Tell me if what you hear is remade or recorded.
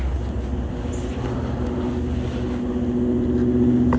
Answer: recorded